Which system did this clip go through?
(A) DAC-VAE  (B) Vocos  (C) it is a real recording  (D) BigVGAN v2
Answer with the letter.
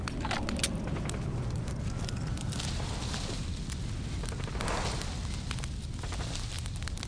C